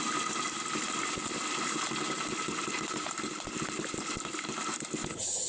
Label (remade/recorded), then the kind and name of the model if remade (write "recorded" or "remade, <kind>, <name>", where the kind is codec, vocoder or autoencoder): recorded